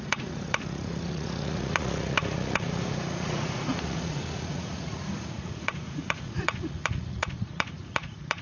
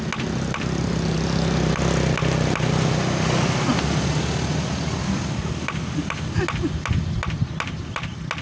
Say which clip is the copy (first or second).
first